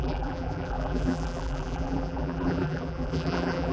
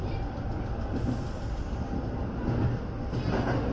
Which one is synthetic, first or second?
first